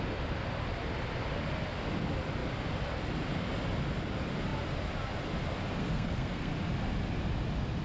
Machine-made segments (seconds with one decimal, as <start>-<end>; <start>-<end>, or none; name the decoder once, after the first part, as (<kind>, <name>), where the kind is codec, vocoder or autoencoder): 5.8-6.5 (codec, SNAC)